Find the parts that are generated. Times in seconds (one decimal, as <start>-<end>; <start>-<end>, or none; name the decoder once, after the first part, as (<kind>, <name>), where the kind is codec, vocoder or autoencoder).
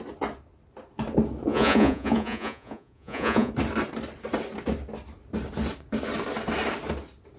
1.5-3.5 (vocoder, Vocos)